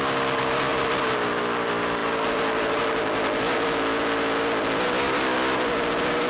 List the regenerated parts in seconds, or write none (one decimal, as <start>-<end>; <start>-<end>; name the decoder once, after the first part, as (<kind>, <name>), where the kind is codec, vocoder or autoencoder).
none